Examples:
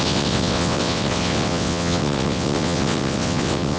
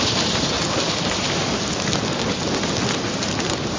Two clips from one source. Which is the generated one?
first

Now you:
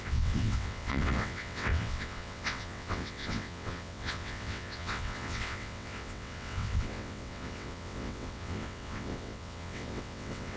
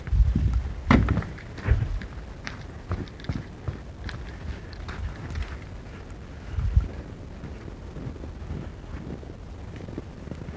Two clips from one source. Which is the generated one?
first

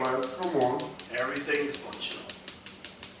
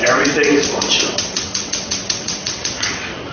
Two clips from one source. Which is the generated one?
second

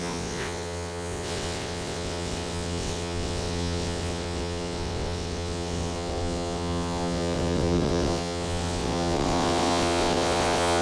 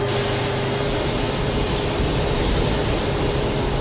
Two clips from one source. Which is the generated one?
first